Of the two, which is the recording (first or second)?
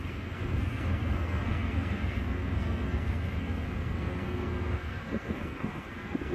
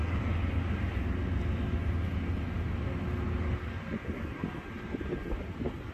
second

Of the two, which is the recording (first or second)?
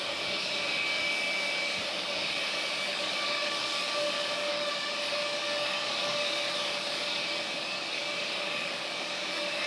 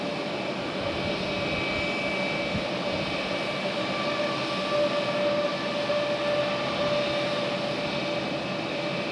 second